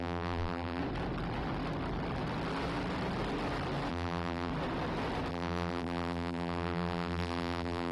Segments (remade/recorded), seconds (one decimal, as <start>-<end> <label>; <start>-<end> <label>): 0.0-0.8 remade; 0.8-3.9 recorded; 3.9-4.5 remade; 4.5-5.3 recorded; 5.3-7.9 remade